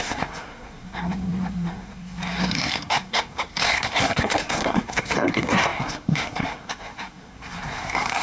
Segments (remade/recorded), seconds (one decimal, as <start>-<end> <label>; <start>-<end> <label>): 0.0-8.2 remade